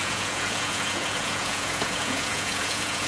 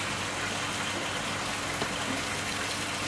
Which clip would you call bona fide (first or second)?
second